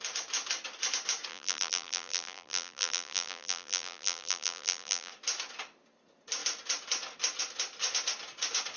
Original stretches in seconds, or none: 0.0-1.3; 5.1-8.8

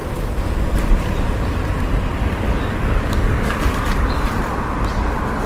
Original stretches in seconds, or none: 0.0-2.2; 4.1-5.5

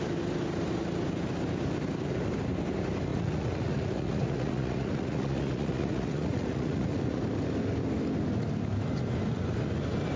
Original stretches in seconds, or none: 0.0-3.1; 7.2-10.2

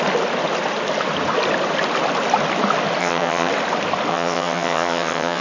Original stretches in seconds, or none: 0.0-3.0; 3.5-4.1

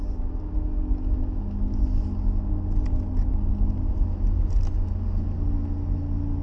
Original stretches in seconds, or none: 0.0-6.4

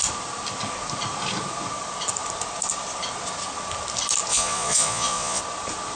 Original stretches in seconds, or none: 0.0-4.3; 5.4-6.0

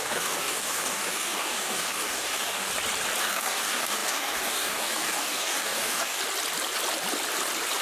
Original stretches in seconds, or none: 2.7-3.2; 6.2-7.8

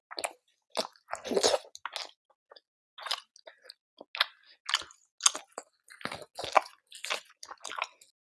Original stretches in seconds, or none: 0.0-8.2